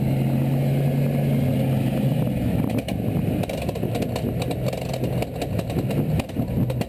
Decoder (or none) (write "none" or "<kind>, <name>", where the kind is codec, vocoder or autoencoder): none